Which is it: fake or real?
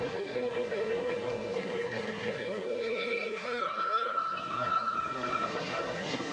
fake